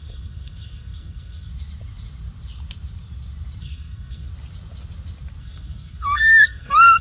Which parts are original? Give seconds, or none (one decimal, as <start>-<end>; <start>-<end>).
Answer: 1.5-3.6; 4.3-5.4